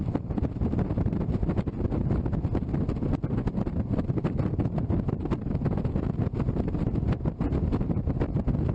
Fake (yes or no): no